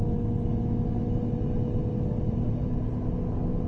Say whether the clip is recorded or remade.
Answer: recorded